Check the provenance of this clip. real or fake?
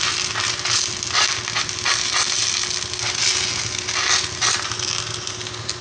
real